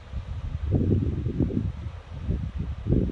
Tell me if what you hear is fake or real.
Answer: real